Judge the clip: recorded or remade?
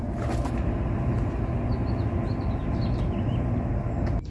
recorded